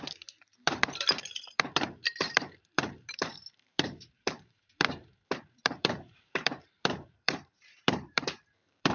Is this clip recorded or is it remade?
remade